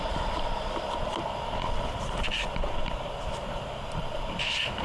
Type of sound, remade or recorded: recorded